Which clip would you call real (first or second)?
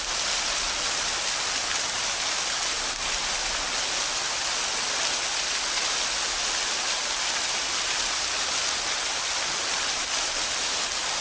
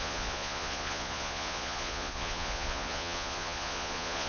first